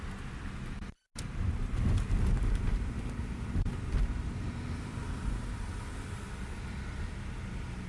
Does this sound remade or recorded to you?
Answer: recorded